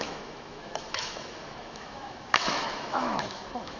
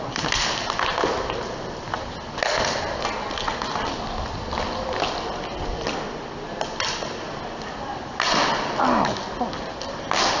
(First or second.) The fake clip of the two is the first